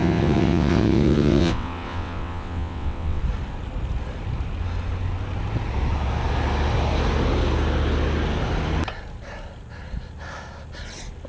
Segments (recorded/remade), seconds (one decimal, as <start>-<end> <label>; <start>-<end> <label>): 0.0-3.2 remade; 3.2-11.3 recorded